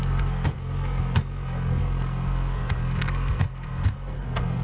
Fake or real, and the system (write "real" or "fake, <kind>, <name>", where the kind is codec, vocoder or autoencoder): fake, codec, SNAC